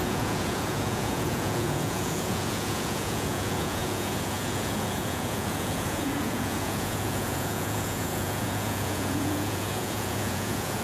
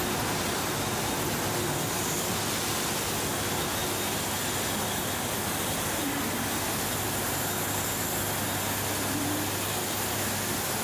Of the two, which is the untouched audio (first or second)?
second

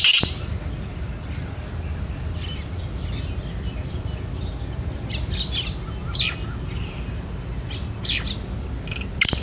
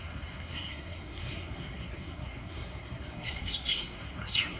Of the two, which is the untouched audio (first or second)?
first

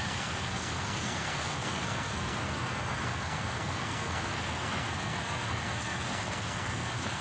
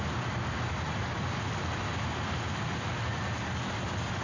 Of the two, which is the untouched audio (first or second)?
second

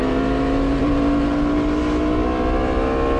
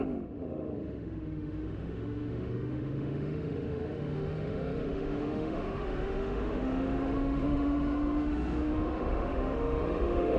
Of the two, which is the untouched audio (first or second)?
first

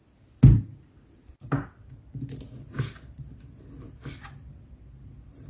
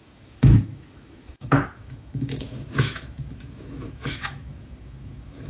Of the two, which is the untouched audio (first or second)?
first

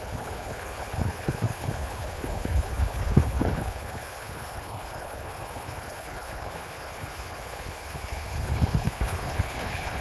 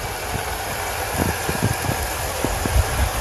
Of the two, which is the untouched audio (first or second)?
second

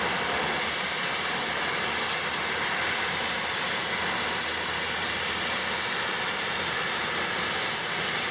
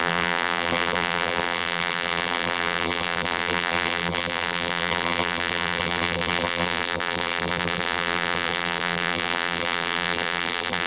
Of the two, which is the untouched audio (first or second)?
first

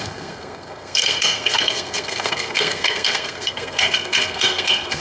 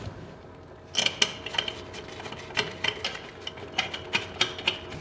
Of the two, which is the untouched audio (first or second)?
second